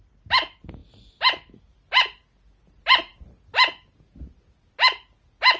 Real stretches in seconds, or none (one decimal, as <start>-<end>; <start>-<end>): 0.0-5.6